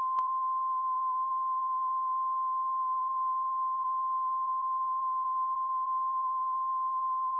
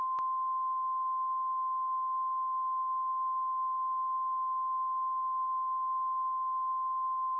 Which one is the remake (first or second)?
first